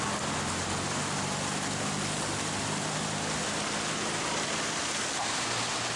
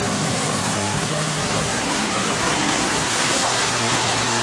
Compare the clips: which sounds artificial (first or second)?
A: second